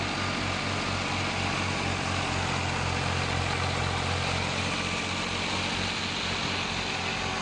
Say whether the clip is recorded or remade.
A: recorded